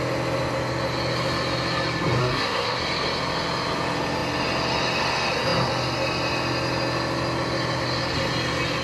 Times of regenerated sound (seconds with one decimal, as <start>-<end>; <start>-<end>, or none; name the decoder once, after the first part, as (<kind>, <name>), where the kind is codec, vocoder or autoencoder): 2.2-2.8 (codec, SNAC)